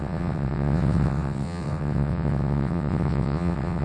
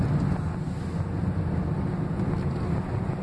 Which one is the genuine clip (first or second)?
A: second